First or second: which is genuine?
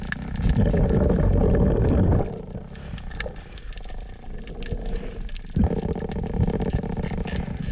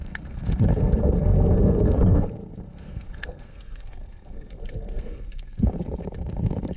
first